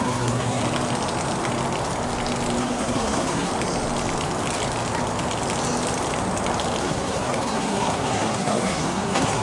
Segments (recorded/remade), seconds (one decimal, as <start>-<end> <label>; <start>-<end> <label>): 0.0-0.6 remade; 0.6-2.6 recorded; 2.6-3.5 remade; 3.5-6.8 recorded; 6.8-9.4 remade